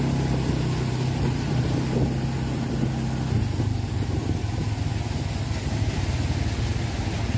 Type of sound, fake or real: real